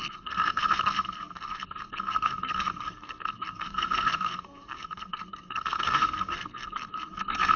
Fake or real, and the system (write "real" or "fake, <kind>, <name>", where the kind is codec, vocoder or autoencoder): fake, codec, SNAC